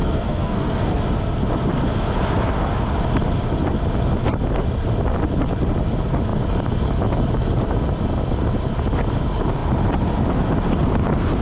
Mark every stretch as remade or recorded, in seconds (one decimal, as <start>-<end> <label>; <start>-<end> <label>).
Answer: 0.0-1.0 remade; 1.0-11.4 recorded